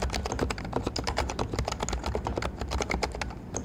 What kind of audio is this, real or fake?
real